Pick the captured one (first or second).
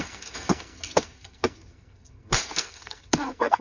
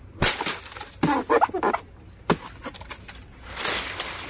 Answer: second